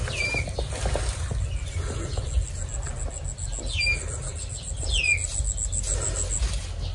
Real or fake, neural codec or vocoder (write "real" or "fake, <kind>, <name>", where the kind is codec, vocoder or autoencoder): real